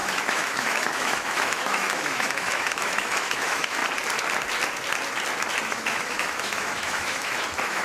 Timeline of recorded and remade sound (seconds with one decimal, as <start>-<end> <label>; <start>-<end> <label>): 0.0-3.8 remade; 3.8-5.6 recorded; 5.6-7.8 remade